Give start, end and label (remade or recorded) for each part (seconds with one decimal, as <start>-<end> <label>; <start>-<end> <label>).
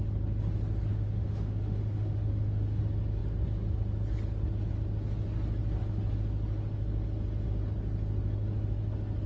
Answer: 0.0-0.9 recorded; 0.9-2.8 remade; 2.8-9.3 recorded